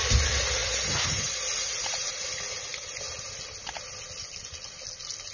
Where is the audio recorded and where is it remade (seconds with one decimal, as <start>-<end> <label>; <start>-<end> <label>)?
0.0-0.6 recorded; 0.6-2.2 remade; 2.2-5.3 recorded